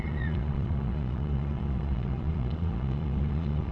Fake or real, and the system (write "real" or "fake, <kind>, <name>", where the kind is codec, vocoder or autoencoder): fake, vocoder, Vocos